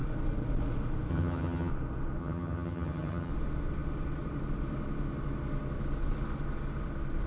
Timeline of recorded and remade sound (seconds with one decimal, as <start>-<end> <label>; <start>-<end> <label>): 0.0-1.1 recorded; 1.1-1.7 remade; 1.7-2.2 recorded; 2.2-3.3 remade; 3.3-7.3 recorded